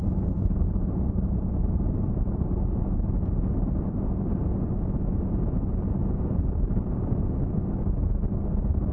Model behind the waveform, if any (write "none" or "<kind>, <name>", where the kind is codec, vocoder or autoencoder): none